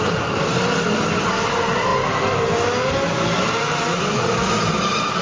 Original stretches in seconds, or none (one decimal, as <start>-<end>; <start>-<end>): 0.0-5.2